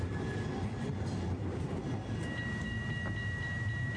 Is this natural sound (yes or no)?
yes